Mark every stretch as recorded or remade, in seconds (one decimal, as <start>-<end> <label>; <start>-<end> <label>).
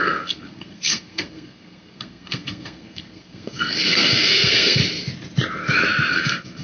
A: 0.0-4.8 remade; 4.8-6.1 recorded; 6.1-6.6 remade